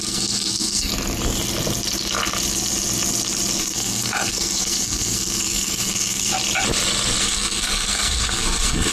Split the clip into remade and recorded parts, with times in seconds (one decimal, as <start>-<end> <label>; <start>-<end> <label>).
0.0-0.9 remade; 0.9-3.6 recorded; 3.6-6.3 remade; 6.3-7.2 recorded; 7.2-8.9 remade